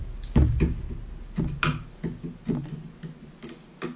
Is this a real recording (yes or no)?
yes